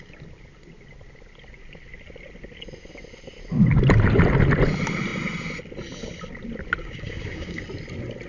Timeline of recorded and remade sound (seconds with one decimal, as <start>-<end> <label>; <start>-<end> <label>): 0.0-6.8 recorded; 6.8-7.6 remade; 7.6-8.3 recorded